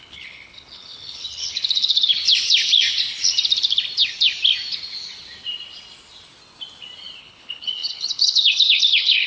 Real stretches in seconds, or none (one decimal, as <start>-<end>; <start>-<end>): 2.1-7.2